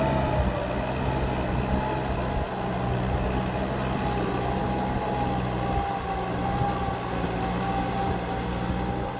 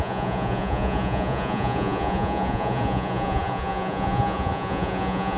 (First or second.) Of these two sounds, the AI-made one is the second